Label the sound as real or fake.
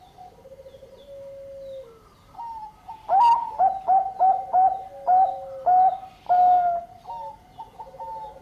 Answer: real